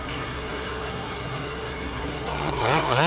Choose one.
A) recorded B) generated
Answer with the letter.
B